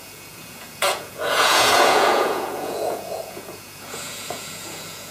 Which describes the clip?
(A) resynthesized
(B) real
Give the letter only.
A